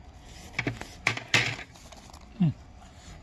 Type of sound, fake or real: real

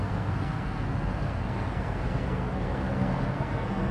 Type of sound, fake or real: fake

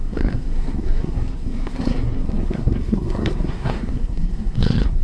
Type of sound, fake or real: fake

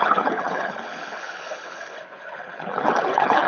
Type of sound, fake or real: fake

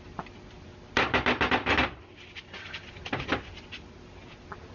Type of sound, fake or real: real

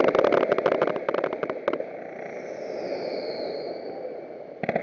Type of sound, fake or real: real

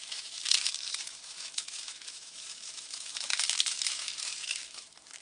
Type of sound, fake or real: fake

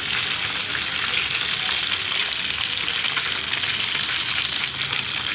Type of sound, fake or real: real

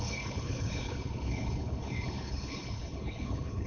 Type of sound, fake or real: fake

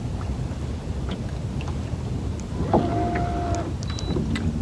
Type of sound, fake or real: real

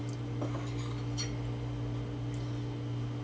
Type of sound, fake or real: real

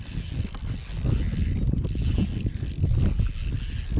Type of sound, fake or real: real